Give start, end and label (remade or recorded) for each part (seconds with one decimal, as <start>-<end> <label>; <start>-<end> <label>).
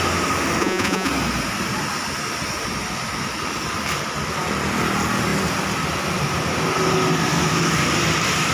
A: 0.0-0.6 recorded; 0.6-1.1 remade; 1.1-8.5 recorded